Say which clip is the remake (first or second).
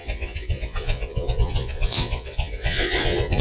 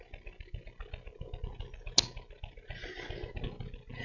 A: first